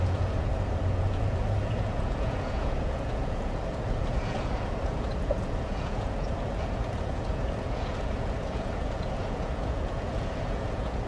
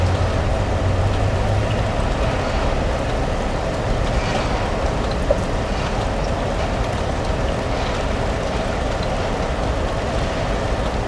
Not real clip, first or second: first